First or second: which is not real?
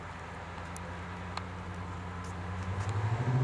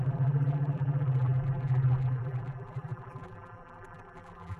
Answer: second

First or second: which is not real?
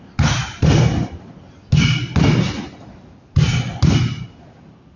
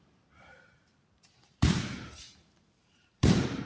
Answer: second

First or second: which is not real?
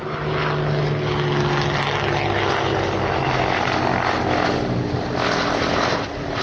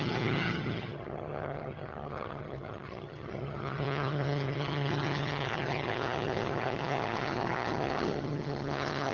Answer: second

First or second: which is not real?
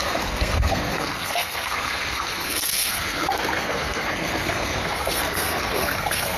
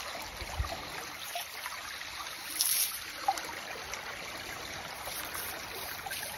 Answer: first